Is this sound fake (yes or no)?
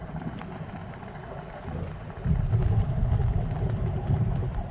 yes